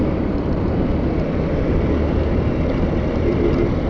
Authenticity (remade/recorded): recorded